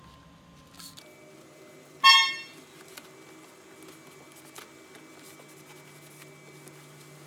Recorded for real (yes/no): yes